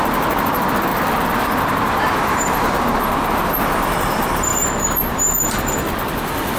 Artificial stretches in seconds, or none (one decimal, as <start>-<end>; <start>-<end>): 0.0-4.5; 5.1-6.6

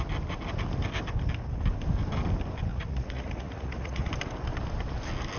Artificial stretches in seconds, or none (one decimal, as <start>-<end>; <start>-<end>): 2.7-4.1

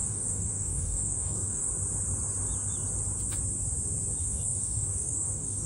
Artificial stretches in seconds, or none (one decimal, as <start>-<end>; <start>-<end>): 0.0-1.7; 4.2-5.7

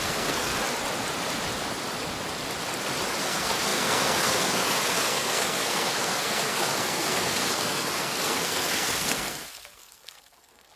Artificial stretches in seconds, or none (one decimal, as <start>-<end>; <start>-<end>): 0.0-0.5; 3.2-10.8

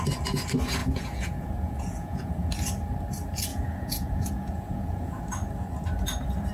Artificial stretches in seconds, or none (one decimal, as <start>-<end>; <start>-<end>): 0.8-2.5; 3.5-5.2